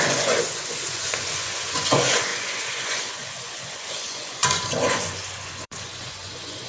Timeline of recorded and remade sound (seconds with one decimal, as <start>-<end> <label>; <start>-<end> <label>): 0.0-6.7 remade